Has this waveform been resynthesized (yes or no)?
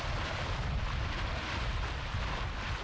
no